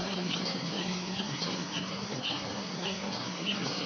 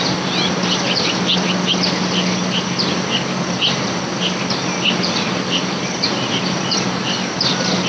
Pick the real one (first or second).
second